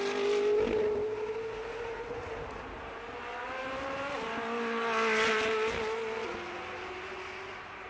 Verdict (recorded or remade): recorded